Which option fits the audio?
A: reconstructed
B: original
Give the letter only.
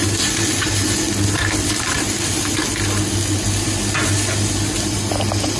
B